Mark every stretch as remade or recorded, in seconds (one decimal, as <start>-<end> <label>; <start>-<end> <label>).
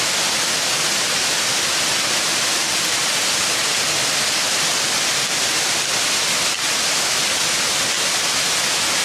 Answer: 0.0-2.6 recorded; 2.6-3.3 remade; 3.3-9.0 recorded